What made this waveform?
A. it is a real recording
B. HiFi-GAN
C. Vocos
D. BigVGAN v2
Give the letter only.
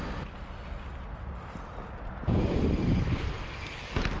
A